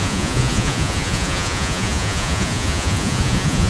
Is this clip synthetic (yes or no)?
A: yes